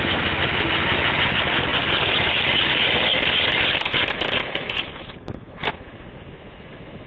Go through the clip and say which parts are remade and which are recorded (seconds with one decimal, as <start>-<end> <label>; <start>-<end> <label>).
0.0-7.1 recorded